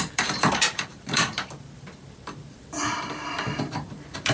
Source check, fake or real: fake